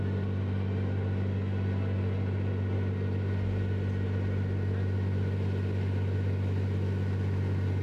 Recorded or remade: recorded